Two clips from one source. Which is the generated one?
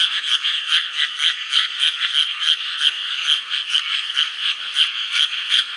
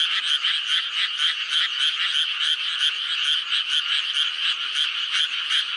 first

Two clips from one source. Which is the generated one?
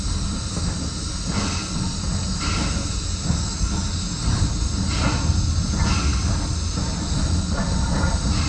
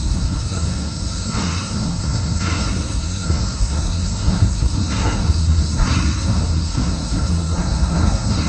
second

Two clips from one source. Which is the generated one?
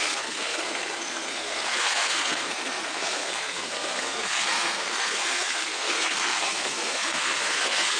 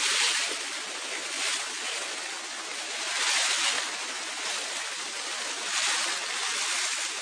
first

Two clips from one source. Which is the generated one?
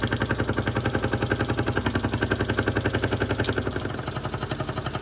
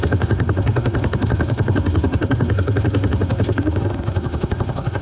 second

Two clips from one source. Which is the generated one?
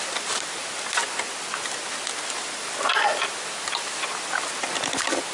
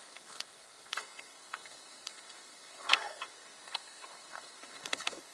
second